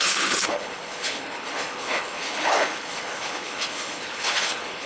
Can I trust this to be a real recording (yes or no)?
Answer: no